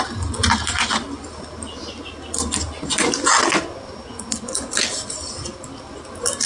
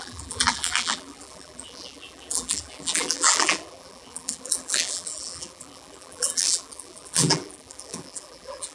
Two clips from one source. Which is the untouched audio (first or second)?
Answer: first